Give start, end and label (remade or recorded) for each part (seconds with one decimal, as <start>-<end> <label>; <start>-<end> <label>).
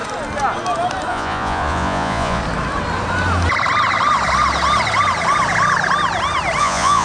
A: 0.0-1.1 recorded; 1.1-2.4 remade; 2.4-6.6 recorded; 6.6-7.0 remade